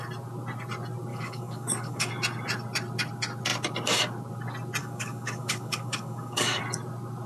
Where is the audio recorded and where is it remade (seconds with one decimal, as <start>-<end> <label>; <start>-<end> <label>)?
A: 0.0-1.1 recorded; 1.1-2.1 remade; 2.1-4.8 recorded; 4.8-6.6 remade; 6.6-7.3 recorded